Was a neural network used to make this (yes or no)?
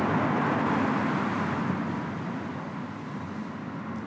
no